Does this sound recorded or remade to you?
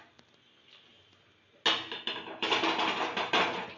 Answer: recorded